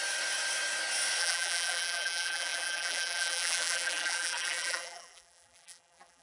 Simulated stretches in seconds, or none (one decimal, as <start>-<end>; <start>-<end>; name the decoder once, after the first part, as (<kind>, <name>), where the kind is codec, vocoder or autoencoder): 1.2-6.2 (vocoder, BigVGAN v2)